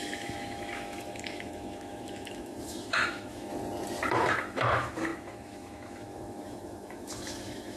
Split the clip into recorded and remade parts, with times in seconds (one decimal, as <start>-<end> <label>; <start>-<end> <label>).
0.0-3.5 remade; 3.5-4.1 recorded; 4.1-7.8 remade